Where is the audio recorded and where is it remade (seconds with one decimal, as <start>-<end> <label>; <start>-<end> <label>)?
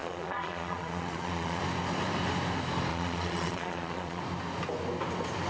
0.0-1.6 remade; 1.6-2.9 recorded; 2.9-4.2 remade; 4.2-5.5 recorded